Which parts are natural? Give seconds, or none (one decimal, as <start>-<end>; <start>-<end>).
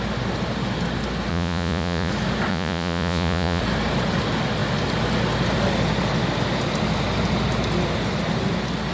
0.0-1.3; 2.1-2.5; 3.6-8.9